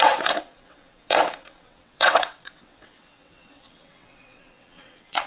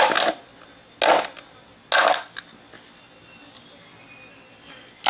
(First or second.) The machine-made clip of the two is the first